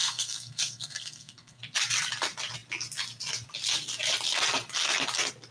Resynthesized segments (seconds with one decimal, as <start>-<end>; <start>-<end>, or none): 0.0-1.6